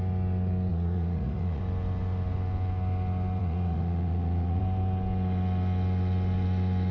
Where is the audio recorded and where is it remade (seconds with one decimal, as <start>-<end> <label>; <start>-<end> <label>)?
0.0-0.7 recorded; 0.7-1.6 remade; 1.6-3.4 recorded; 3.4-4.6 remade; 4.6-6.9 recorded